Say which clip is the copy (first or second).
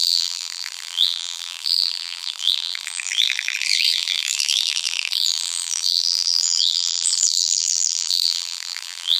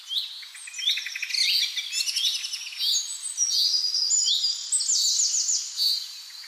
first